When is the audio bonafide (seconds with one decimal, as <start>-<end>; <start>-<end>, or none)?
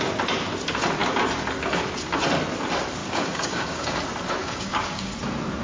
0.0-3.0; 4.0-4.4; 5.1-5.6